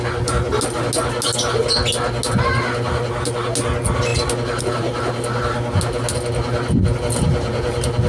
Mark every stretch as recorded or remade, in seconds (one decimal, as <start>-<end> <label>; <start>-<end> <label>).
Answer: 0.0-8.1 recorded